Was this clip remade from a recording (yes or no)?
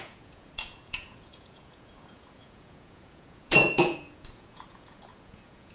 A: yes